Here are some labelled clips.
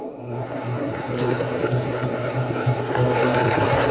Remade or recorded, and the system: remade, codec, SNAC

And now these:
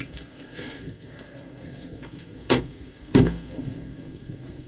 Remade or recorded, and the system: remade, codec, SNAC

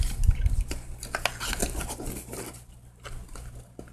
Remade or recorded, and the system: recorded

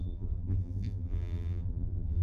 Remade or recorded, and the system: remade, vocoder, BigVGAN v2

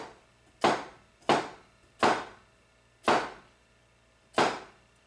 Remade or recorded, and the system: recorded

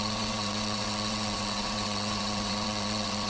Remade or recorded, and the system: remade, vocoder, WaveNeXt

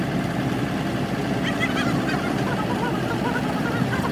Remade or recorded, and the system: recorded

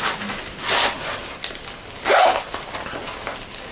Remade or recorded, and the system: recorded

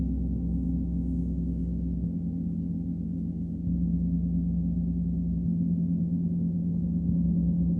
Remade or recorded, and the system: recorded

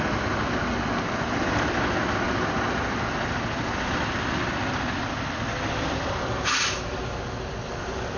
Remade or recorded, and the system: recorded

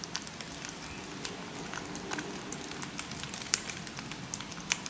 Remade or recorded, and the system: recorded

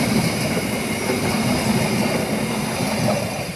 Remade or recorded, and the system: recorded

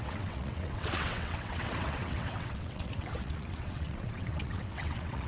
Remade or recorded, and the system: remade, vocoder, WaveNeXt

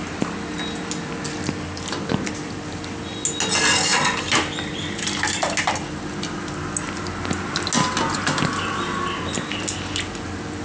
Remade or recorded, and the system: recorded